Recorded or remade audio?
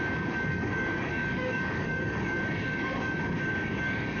remade